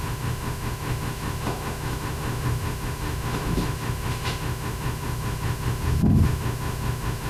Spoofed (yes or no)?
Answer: yes